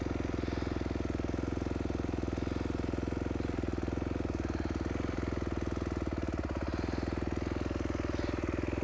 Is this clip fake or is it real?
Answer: real